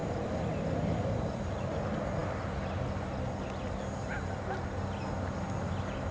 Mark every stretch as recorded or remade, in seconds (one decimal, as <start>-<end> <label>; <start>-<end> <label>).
0.0-0.9 remade; 0.9-6.1 recorded